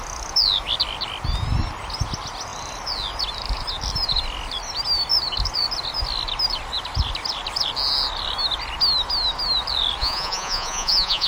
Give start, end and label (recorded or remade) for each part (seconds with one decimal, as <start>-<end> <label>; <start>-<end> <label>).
0.0-10.0 recorded; 10.0-11.3 remade